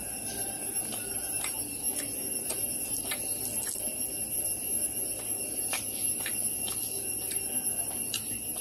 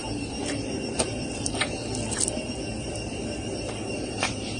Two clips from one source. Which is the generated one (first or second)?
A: second